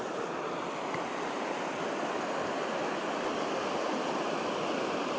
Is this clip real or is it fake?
real